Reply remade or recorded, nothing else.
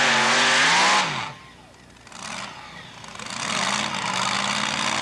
recorded